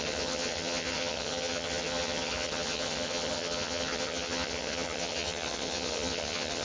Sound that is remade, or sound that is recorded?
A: remade